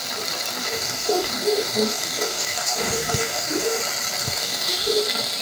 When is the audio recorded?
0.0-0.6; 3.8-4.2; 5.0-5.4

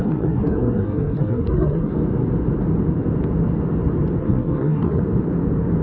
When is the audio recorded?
1.9-4.2; 5.0-5.8